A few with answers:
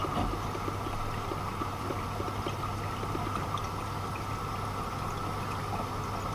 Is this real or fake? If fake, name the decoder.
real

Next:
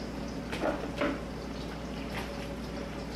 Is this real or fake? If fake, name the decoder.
real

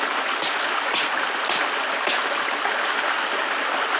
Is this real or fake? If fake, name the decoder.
real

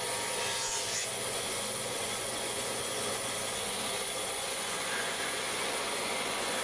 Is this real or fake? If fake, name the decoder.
fake, vocoder, Vocos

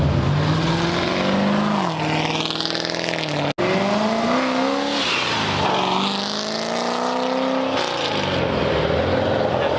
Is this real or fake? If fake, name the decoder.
real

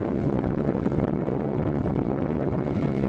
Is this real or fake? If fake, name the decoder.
fake, vocoder, WaveNeXt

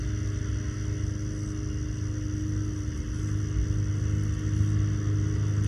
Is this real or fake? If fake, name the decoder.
real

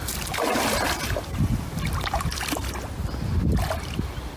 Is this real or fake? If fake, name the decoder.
real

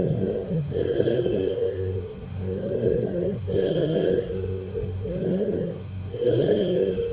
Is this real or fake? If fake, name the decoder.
fake, codec, SNAC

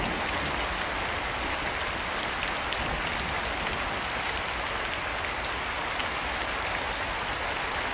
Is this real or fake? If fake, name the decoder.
real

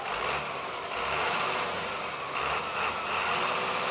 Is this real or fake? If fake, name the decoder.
real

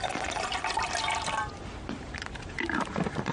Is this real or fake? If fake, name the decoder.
real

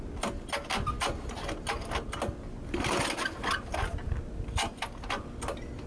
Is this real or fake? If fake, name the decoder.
real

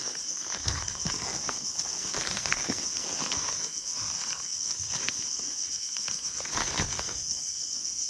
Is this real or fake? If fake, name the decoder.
fake, codec, SNAC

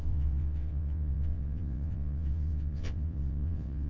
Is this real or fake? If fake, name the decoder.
fake, vocoder, WaveNeXt